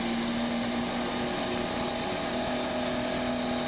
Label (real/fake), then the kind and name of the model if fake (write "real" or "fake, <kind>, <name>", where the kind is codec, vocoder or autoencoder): real